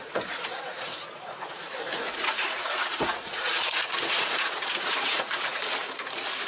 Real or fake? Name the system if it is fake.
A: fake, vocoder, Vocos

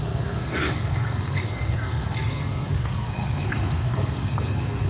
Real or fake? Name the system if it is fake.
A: fake, codec, SNAC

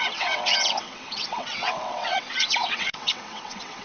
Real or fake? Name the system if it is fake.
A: fake, vocoder, WaveNeXt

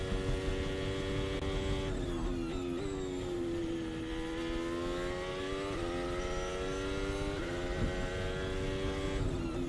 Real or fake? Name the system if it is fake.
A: real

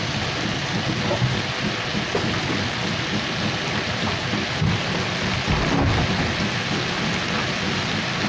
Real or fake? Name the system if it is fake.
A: real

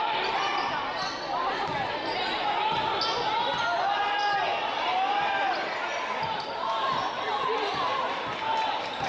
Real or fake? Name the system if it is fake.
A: real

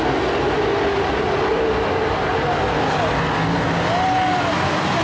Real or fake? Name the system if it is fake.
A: real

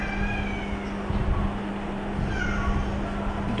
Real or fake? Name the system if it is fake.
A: real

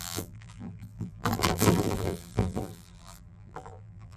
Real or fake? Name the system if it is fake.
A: fake, vocoder, BigVGAN v2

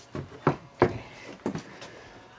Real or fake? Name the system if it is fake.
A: real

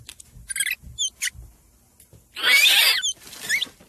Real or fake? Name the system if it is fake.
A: real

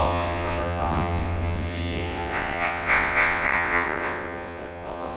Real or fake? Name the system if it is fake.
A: fake, vocoder, WaveNeXt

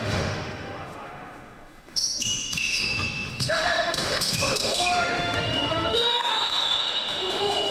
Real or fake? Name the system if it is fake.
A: fake, autoencoder, DAC-VAE